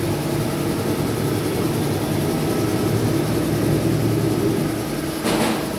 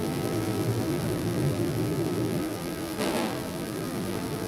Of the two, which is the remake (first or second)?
second